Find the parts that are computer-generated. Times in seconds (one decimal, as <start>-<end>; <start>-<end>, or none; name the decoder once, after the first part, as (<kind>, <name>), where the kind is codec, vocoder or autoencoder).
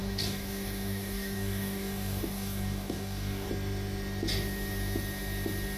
0.0-3.5 (codec, DAC)